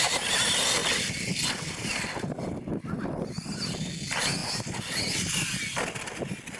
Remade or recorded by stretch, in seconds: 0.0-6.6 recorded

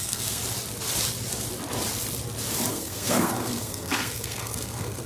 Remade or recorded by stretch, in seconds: 0.0-0.4 remade; 0.4-2.7 recorded; 2.7-5.1 remade

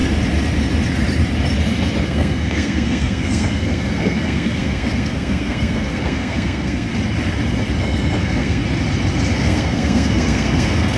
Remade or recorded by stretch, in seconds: 0.0-2.0 recorded; 2.0-6.9 remade; 6.9-7.8 recorded; 7.8-8.6 remade; 8.6-9.3 recorded; 9.3-11.0 remade

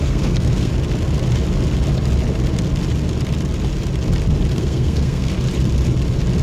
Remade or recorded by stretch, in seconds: 0.0-0.7 remade; 0.7-4.5 recorded; 4.5-5.3 remade; 5.3-6.4 recorded

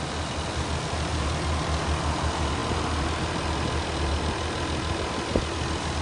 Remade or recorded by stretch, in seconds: 0.0-6.0 recorded

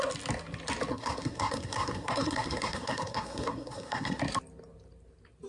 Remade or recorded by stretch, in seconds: 0.0-0.9 recorded; 0.9-4.2 remade; 4.2-5.5 recorded

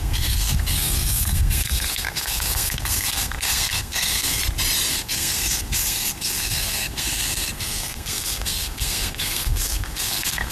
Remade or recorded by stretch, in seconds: 0.0-4.4 remade; 4.4-4.9 recorded; 4.9-10.5 remade